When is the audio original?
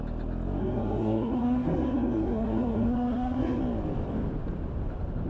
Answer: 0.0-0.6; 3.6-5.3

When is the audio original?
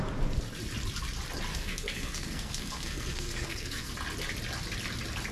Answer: 0.0-1.5; 3.9-5.3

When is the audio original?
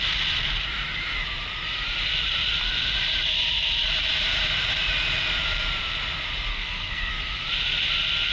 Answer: 0.0-6.5; 7.1-8.3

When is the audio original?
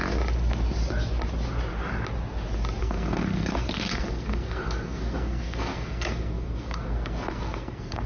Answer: 0.0-2.8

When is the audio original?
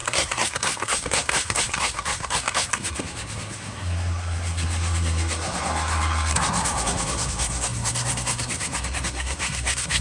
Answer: none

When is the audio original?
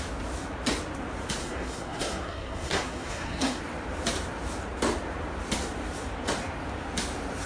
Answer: 0.0-1.4; 3.6-7.5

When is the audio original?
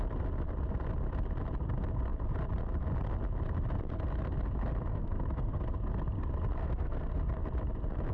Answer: 0.0-4.9; 5.6-6.6; 7.2-8.1